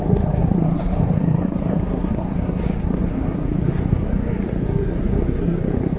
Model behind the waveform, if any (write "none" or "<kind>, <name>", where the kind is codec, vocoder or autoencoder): codec, SNAC